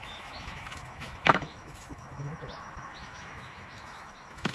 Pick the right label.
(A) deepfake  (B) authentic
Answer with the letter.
A